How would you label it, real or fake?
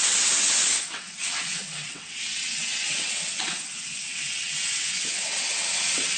fake